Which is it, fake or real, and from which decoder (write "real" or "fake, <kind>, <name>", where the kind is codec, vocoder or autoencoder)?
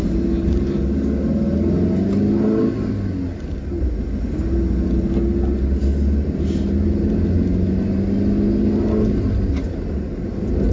real